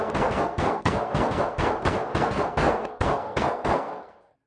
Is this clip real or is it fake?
fake